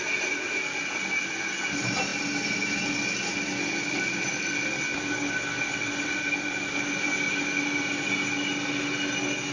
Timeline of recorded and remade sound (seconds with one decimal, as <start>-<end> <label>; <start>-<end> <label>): 0.0-9.5 recorded